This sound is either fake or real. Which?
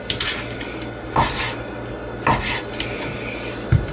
real